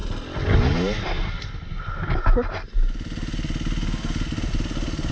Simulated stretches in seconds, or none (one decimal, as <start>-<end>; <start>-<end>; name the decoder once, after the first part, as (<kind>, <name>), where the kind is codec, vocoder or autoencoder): none